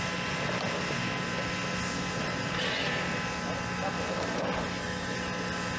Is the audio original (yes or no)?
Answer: yes